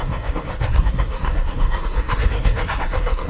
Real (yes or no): no